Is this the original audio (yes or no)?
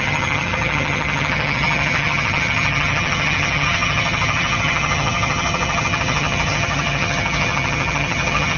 no